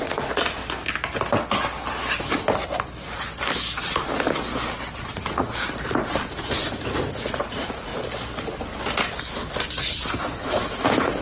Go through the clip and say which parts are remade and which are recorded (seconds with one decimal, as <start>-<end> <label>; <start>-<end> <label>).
0.0-0.6 remade; 0.6-5.0 recorded; 5.0-5.5 remade; 5.5-6.3 recorded; 6.3-7.9 remade; 7.9-10.2 recorded; 10.2-11.2 remade